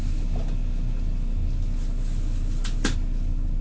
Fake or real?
real